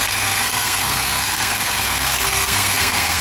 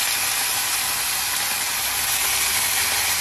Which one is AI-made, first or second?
first